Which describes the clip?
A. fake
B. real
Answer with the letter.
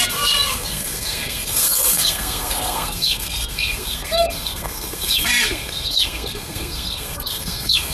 A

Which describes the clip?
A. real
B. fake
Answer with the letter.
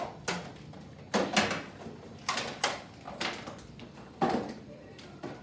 A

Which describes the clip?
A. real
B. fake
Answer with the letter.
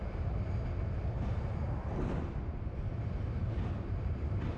B